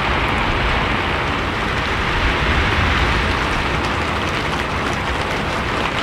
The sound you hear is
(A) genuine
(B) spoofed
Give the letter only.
A